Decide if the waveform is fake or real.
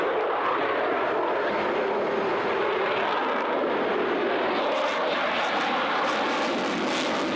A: real